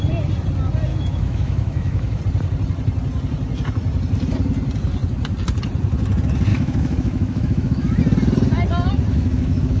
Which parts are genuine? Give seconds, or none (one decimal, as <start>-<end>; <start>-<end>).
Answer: 0.0-0.9; 2.2-6.5; 8.0-9.1